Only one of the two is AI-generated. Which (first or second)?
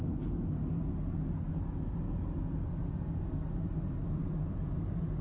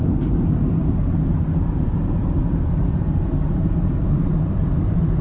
second